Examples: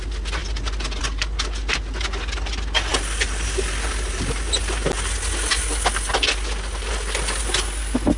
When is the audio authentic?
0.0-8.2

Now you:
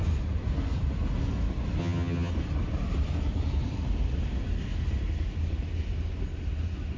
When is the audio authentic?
0.0-1.8; 2.3-7.0

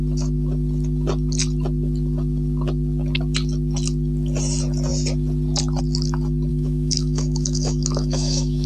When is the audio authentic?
0.0-6.5

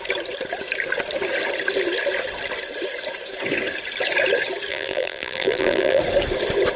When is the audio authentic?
0.0-4.7; 6.0-6.8

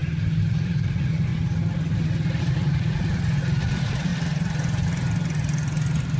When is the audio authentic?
0.0-0.5; 1.3-2.4; 4.1-6.2